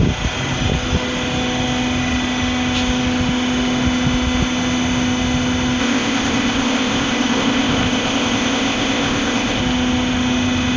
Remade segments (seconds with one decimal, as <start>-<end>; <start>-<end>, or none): 5.8-9.6